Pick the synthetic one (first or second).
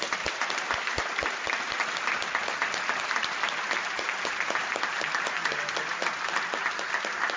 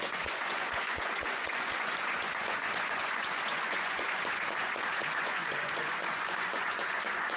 second